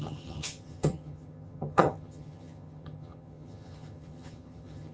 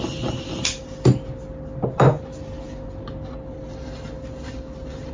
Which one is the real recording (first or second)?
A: second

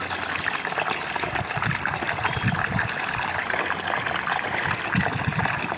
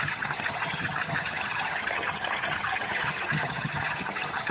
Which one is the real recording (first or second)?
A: first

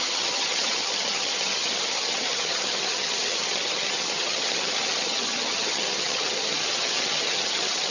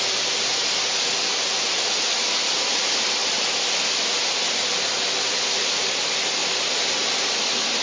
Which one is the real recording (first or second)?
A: second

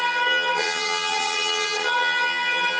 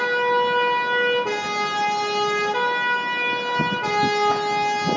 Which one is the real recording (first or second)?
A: second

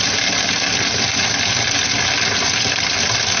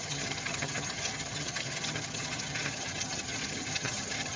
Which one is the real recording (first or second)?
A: first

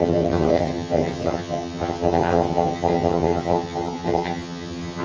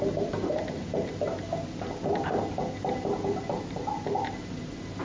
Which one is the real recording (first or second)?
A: second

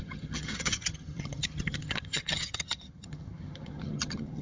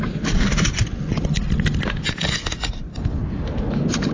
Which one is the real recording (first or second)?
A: second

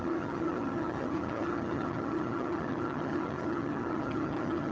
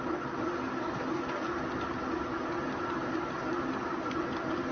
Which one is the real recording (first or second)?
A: second